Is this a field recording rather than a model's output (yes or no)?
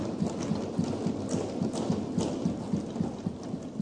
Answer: yes